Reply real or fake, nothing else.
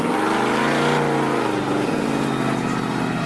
real